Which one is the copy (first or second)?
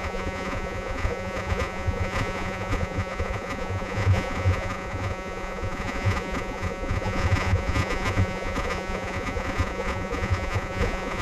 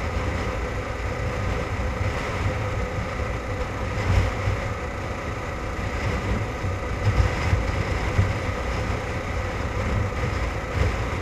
first